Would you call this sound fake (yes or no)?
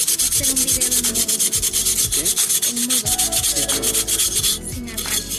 no